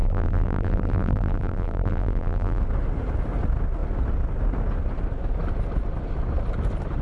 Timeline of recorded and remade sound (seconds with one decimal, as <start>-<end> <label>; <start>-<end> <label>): 0.0-2.6 remade; 2.6-7.0 recorded